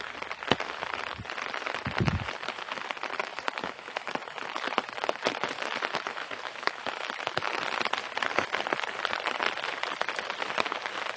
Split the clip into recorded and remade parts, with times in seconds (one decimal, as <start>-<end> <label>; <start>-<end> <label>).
0.0-3.2 recorded; 3.2-7.6 remade; 7.6-11.2 recorded